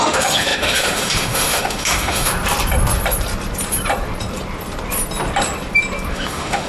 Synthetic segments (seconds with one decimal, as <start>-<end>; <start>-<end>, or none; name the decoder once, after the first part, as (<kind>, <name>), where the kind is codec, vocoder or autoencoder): 0.0-2.3 (autoencoder, DAC-VAE); 6.1-6.7